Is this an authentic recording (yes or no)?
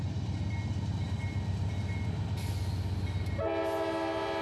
yes